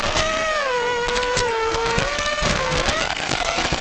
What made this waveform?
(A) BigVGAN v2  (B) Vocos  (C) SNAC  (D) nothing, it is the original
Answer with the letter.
C